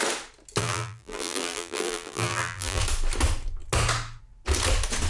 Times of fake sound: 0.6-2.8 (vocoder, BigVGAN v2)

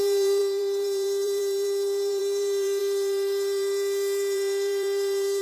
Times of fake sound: 0.0-5.4 (vocoder, BigVGAN v2)

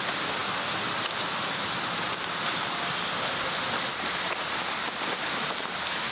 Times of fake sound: none